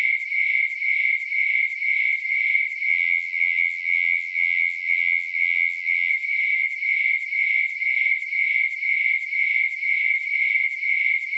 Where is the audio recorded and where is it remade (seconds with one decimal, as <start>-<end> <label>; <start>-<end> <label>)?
0.0-2.9 recorded; 2.9-6.1 remade; 6.1-11.4 recorded